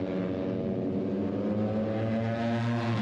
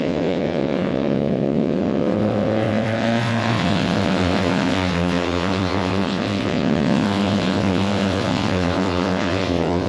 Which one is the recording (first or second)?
first